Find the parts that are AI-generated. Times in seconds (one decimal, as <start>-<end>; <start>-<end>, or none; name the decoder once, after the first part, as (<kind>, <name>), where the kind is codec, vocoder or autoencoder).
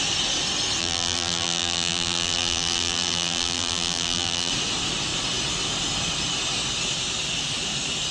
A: 0.8-4.5 (vocoder, BigVGAN v2)